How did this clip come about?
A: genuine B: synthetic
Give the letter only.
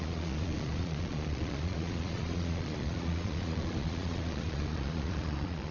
B